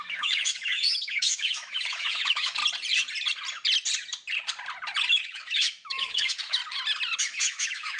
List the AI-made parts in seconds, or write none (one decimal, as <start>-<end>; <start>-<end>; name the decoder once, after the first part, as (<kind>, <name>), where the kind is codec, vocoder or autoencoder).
0.0-2.6 (autoencoder, DAC-VAE); 5.1-6.6; 7.2-8.0